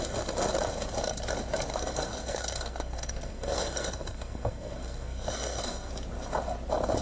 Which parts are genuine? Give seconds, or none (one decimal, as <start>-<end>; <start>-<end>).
0.0-1.7; 5.9-7.0